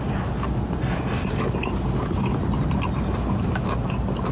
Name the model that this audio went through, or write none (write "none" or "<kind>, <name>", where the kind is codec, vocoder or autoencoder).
none